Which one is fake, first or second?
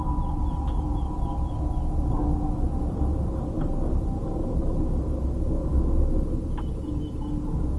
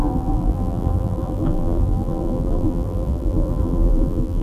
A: second